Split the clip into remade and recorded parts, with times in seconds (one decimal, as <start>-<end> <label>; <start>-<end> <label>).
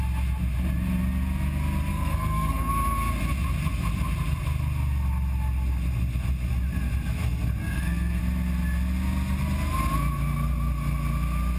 0.0-1.9 recorded; 1.9-2.7 remade; 2.7-7.6 recorded; 7.6-8.2 remade; 8.2-11.6 recorded